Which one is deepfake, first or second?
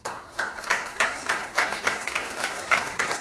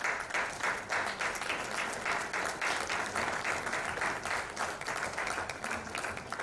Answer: first